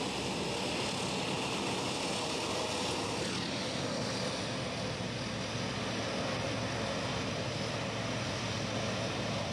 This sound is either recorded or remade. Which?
recorded